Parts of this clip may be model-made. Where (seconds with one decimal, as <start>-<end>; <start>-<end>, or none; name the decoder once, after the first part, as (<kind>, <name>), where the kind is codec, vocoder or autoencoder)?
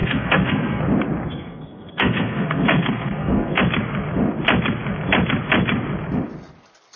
0.0-0.8 (codec, SNAC); 1.3-3.6